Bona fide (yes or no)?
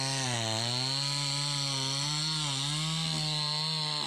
yes